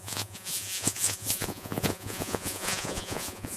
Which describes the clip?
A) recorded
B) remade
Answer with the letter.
B